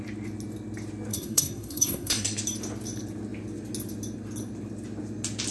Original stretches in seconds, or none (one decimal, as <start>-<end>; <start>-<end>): 0.0-1.1; 2.4-5.5